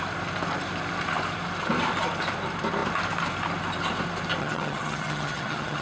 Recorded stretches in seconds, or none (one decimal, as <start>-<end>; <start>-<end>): 0.0-4.4